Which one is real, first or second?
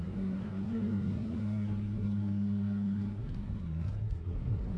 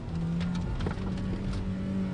second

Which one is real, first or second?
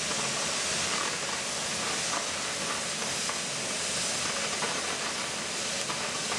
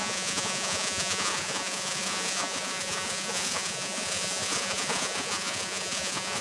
first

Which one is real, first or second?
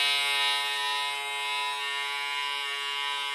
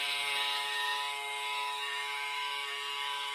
first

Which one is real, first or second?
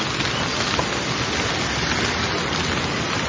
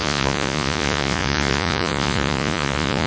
first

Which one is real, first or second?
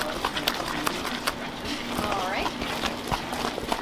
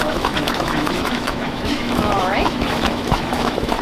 first